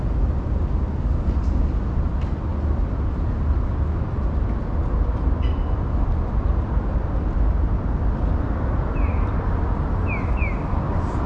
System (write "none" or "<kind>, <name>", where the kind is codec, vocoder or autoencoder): none